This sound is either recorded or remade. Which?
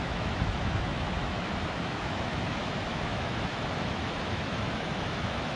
remade